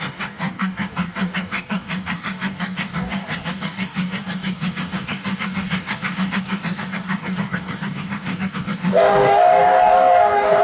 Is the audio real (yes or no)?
no